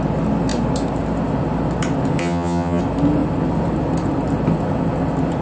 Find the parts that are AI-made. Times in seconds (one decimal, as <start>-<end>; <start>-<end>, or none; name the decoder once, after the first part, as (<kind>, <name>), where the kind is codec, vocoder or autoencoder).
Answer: 2.2-2.8 (vocoder, HiFi-GAN)